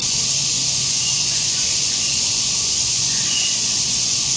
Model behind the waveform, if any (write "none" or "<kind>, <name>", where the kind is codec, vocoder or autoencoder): vocoder, Vocos